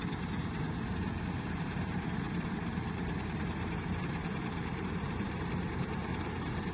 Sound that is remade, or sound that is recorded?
remade